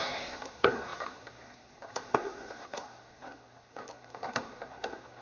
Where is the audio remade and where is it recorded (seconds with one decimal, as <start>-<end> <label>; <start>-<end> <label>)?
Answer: 0.0-5.2 remade